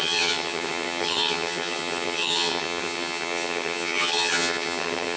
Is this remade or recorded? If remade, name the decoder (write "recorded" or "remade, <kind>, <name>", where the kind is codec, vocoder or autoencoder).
remade, vocoder, HiFi-GAN